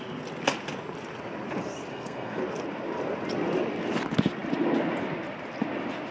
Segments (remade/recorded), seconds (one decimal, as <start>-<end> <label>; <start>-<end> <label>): 0.0-1.9 recorded; 1.9-2.4 remade; 2.4-6.1 recorded